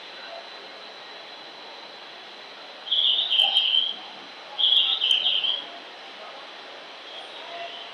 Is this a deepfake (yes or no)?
no